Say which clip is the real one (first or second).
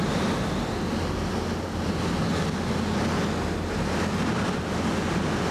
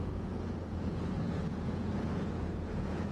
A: first